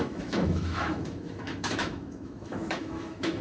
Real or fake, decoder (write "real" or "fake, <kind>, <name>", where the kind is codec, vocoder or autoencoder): fake, autoencoder, DAC-VAE